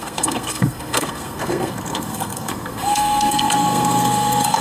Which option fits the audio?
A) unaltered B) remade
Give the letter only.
B